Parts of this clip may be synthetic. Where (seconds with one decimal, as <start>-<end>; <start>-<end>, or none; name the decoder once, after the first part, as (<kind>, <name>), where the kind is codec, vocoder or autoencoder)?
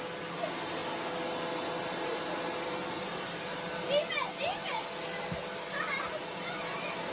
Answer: none